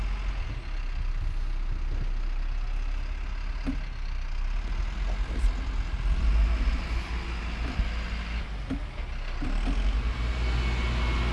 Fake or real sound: real